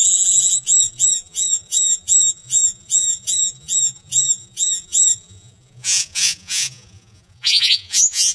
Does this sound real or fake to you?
fake